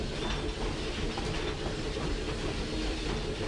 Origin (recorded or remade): recorded